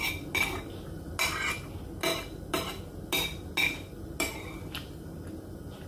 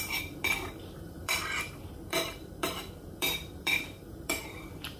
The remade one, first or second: second